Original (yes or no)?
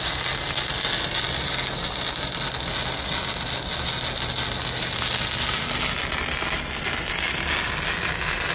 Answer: yes